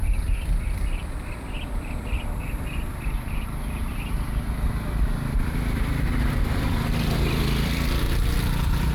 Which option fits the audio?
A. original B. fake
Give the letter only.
B